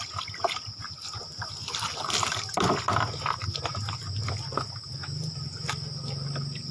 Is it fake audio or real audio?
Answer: real